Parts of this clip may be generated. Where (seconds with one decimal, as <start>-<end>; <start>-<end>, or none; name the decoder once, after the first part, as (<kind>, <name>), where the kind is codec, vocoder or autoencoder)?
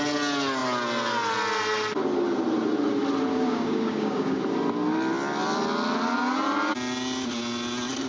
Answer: 3.3-4.4 (codec, DAC)